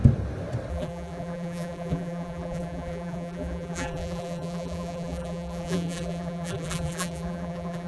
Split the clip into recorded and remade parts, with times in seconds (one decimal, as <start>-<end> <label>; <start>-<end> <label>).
0.0-0.7 recorded; 0.7-7.9 remade